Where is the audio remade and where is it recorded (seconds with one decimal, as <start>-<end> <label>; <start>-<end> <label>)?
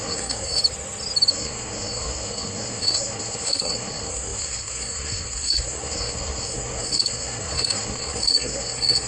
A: 0.0-0.6 remade; 0.6-1.3 recorded; 1.3-9.1 remade